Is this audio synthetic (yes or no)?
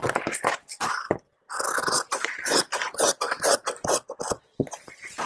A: no